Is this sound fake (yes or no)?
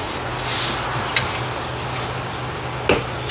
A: no